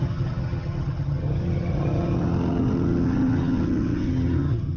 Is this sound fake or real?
fake